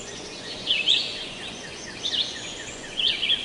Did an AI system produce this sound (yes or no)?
yes